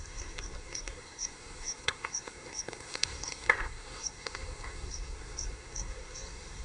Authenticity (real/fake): fake